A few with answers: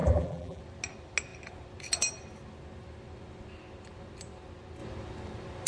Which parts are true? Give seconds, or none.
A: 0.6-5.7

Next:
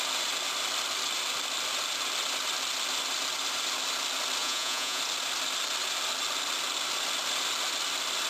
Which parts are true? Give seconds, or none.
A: 0.0-4.4; 5.0-8.3

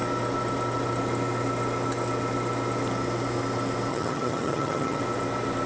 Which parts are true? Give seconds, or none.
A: 0.0-3.9; 5.0-5.7

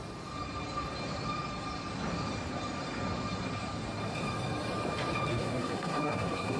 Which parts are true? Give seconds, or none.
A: 0.0-5.3

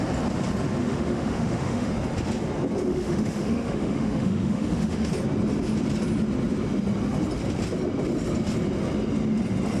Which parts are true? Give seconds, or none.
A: 0.0-0.8; 1.9-2.9; 5.1-9.8

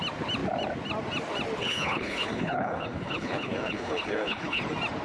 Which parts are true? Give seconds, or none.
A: 0.0-1.6; 4.6-5.0

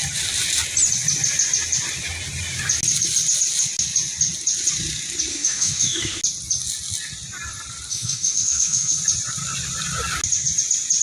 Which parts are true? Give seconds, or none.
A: 0.0-5.3; 6.2-7.9; 9.0-11.0